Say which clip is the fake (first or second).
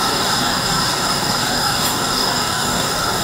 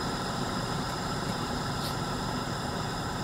first